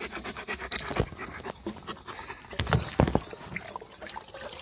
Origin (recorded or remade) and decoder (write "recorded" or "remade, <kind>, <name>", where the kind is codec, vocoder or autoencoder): recorded